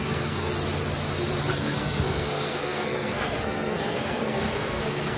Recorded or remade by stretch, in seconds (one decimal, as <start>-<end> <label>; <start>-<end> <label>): 0.0-0.5 remade; 0.5-1.5 recorded; 1.5-5.2 remade